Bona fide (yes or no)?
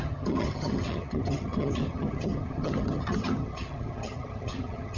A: no